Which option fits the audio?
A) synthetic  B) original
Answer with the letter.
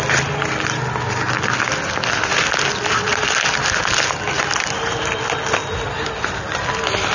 B